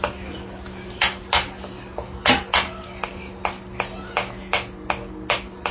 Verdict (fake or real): real